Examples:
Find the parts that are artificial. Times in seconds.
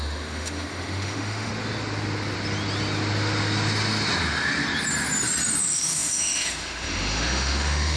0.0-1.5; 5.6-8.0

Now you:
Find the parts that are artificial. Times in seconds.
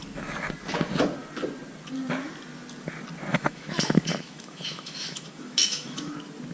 3.3-6.1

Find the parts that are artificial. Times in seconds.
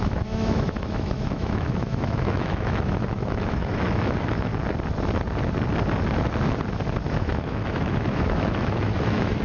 0.0-4.5; 7.1-9.4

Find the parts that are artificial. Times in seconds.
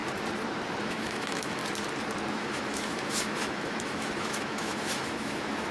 0.8-1.6; 2.3-5.7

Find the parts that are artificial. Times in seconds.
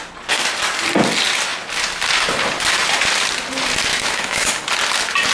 3.9-4.5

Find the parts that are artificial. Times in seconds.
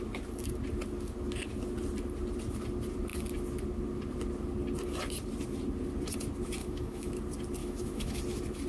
6.6-7.1; 7.6-8.2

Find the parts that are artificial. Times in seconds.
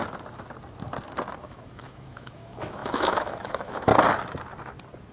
1.4-3.9